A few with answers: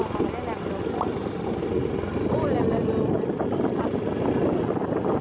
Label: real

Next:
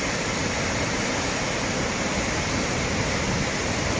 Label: real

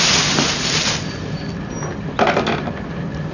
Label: real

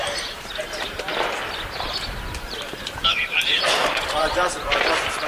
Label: fake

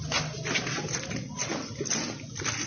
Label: real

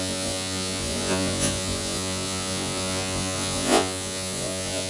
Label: fake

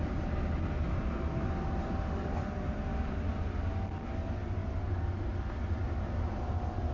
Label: real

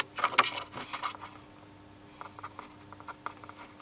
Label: real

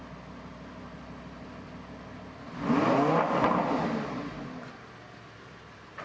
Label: real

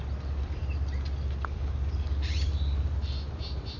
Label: fake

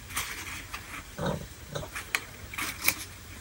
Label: fake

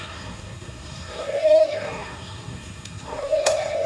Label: fake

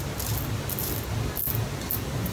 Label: real